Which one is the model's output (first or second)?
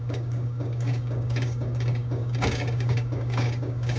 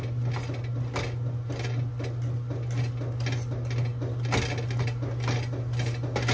first